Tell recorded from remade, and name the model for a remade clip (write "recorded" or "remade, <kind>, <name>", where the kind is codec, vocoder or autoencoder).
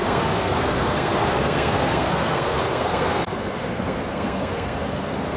remade, codec, SNAC